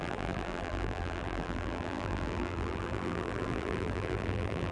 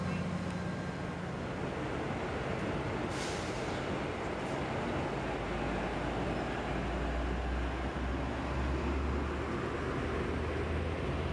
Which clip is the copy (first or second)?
first